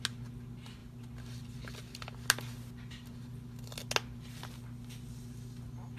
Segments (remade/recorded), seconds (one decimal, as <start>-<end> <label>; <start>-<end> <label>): 0.0-6.0 recorded